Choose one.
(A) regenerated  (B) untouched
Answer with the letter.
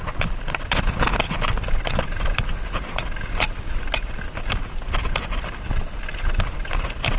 B